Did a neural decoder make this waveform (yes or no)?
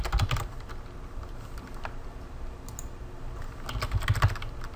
no